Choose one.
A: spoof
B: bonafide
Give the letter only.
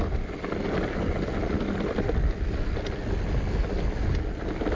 B